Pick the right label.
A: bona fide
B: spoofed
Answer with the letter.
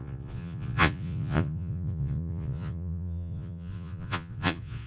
B